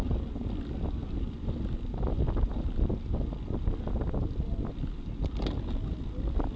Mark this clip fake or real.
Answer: real